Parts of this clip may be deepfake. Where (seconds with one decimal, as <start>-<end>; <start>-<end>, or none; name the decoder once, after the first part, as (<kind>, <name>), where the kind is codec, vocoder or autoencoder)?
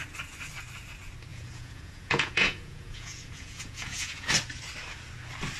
1.3-4.3 (vocoder, Vocos)